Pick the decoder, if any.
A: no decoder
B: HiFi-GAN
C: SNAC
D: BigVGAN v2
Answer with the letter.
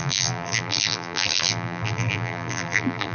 D